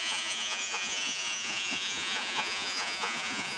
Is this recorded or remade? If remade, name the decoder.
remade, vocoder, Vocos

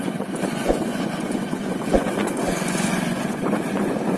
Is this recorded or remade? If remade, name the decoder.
remade, vocoder, Vocos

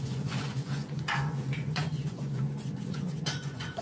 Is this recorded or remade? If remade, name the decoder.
remade, vocoder, Vocos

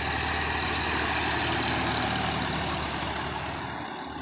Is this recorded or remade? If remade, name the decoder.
recorded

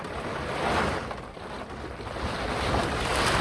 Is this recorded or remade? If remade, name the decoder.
recorded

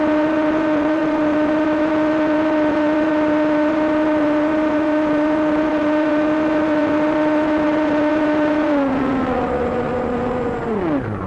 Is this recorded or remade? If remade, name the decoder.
remade, vocoder, Vocos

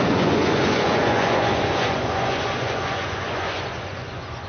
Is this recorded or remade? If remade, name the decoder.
remade, vocoder, Vocos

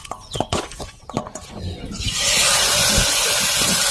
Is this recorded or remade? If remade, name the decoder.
remade, vocoder, Vocos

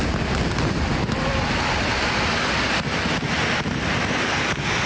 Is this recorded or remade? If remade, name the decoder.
recorded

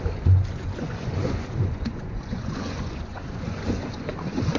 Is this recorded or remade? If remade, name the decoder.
remade, vocoder, Vocos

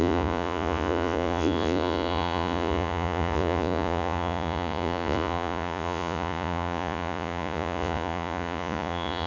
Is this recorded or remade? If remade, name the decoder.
remade, vocoder, Vocos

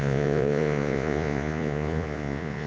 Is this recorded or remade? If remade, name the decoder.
remade, vocoder, Vocos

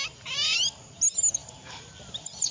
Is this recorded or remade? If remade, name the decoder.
recorded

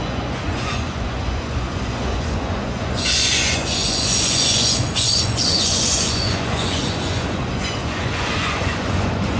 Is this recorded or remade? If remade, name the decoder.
remade, vocoder, Vocos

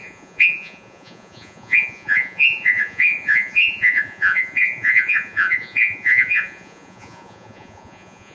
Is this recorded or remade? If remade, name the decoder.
remade, vocoder, Vocos